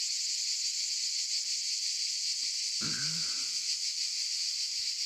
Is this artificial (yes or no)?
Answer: no